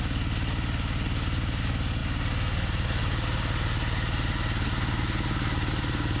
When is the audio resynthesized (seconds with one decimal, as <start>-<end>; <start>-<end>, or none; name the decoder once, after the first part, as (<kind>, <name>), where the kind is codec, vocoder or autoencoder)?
none